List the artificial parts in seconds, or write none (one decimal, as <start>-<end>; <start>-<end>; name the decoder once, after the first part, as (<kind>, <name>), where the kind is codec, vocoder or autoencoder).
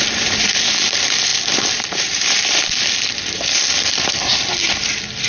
none